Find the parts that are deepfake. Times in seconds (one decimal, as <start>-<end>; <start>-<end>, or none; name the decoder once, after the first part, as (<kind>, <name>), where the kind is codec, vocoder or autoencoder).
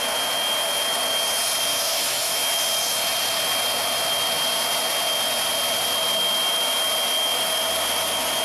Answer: 1.7-2.6 (autoencoder, DAC-VAE)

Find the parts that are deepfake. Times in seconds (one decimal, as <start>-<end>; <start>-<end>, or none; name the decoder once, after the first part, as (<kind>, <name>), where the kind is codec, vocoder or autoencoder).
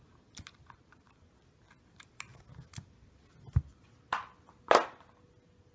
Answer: none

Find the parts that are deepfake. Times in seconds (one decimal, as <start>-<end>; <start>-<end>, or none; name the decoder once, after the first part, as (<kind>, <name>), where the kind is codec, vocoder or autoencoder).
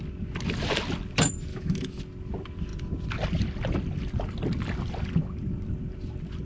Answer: 1.5-2.0 (autoencoder, DAC-VAE)